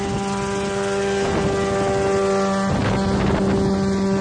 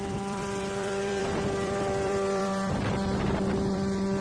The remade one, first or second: second